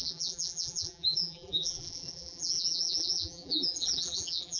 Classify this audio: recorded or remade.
remade